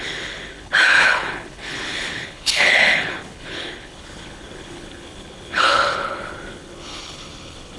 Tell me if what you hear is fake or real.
fake